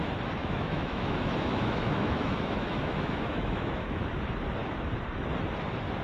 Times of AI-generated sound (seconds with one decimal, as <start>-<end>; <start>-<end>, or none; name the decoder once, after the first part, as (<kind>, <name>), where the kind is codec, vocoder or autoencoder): 0.4-4.0 (autoencoder, DAC-VAE)